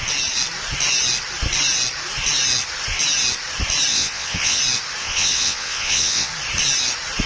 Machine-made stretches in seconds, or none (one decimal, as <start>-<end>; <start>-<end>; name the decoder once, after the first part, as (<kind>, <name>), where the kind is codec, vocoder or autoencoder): 3.9-4.6 (vocoder, WaveNeXt); 5.0-6.3